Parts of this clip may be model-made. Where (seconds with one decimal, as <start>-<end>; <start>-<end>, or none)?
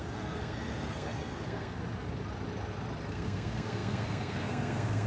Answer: 0.0-1.8; 3.1-5.1